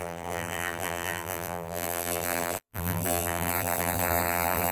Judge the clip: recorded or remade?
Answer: remade